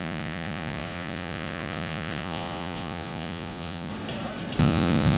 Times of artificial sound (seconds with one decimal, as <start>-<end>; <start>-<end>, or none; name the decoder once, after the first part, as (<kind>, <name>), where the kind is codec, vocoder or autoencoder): 0.0-3.9 (vocoder, Vocos); 4.6-5.2